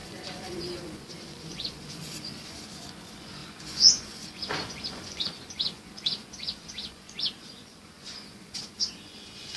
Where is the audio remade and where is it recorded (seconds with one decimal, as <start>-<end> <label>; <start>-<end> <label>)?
0.0-9.6 remade